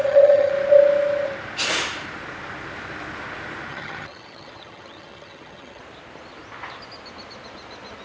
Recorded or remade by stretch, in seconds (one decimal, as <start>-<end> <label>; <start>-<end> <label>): 0.0-0.5 remade; 0.5-3.7 recorded; 3.7-5.8 remade; 5.8-8.0 recorded